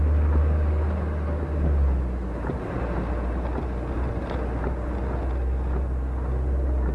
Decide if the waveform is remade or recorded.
recorded